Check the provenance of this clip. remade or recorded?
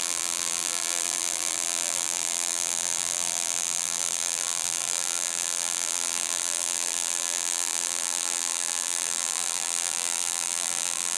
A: remade